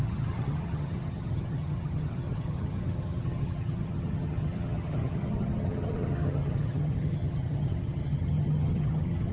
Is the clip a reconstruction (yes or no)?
yes